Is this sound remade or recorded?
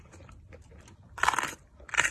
remade